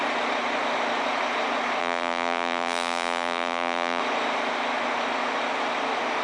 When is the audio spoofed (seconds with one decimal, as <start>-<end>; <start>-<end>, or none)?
1.8-4.0